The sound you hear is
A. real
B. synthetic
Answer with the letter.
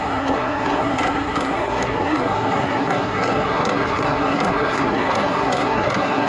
B